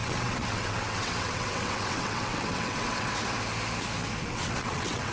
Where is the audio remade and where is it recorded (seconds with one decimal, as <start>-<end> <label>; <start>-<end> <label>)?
0.0-3.1 remade; 3.1-4.2 recorded; 4.2-5.1 remade